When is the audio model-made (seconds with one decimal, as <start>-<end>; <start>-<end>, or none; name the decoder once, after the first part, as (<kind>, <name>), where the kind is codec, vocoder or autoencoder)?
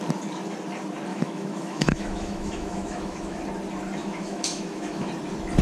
1.1-3.4 (autoencoder, DAC-VAE); 4.0-5.1